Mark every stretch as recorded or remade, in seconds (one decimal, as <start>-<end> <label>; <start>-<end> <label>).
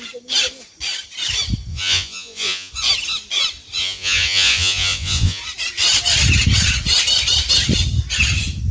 0.0-1.7 recorded; 1.7-2.7 remade; 2.7-3.8 recorded; 3.8-5.4 remade; 5.4-8.7 recorded